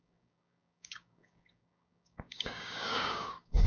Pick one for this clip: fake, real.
fake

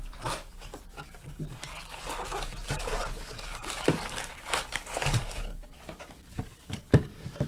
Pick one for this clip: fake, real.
fake